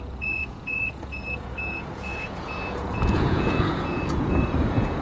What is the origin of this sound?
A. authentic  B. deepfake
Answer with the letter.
B